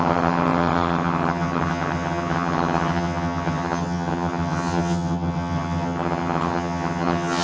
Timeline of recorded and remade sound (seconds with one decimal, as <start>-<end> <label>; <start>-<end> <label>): 0.0-7.4 remade